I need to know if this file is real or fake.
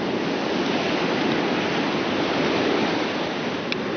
real